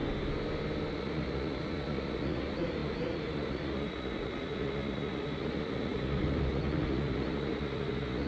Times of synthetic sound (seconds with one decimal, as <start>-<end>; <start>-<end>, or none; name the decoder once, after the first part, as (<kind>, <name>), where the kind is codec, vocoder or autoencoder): 0.9-8.3 (vocoder, Vocos)